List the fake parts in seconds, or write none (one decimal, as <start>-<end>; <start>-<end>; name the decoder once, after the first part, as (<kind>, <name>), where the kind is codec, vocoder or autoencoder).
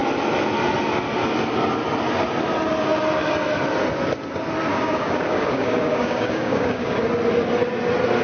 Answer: 4.7-7.0 (codec, DAC)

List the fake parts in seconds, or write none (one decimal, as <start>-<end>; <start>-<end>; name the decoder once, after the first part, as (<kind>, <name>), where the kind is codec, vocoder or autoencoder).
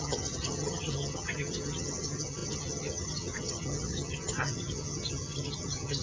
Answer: 0.0-6.0 (vocoder, HiFi-GAN)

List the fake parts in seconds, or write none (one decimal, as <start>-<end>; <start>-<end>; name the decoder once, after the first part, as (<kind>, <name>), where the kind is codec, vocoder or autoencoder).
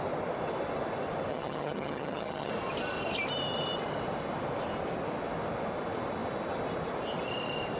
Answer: 1.3-2.5 (vocoder, HiFi-GAN)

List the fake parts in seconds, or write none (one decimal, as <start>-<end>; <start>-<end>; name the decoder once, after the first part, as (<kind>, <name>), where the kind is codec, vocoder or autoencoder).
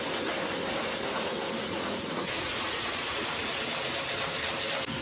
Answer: 1.6-3.6 (vocoder, Vocos)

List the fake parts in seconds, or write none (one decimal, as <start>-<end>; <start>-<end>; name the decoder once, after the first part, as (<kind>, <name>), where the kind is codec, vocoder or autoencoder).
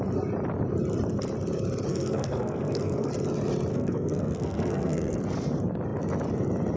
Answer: 1.9-3.1 (codec, SNAC); 3.7-5.2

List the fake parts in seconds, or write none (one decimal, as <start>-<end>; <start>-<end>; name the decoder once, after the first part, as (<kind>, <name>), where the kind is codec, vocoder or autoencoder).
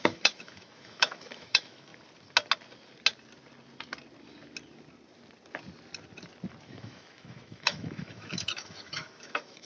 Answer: 0.0-1.9 (autoencoder, DAC-VAE); 6.6-9.6